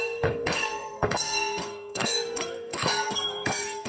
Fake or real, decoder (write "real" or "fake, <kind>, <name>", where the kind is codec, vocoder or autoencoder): fake, codec, SNAC